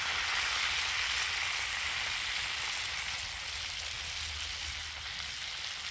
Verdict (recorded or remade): recorded